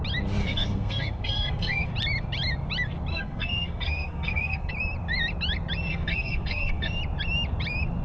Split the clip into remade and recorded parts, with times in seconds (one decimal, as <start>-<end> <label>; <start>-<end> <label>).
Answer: 0.0-0.4 recorded; 0.4-1.9 remade; 1.9-3.1 recorded; 3.1-4.7 remade; 4.7-5.9 recorded; 5.9-7.0 remade; 7.0-8.0 recorded